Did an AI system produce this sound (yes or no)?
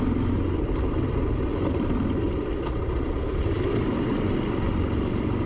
yes